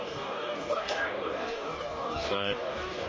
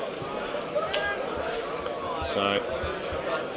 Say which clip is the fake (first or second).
first